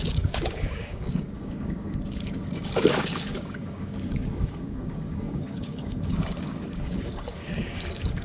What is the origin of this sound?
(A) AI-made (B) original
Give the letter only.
A